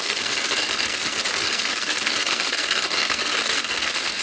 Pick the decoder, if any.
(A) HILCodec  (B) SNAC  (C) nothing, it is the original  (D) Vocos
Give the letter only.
B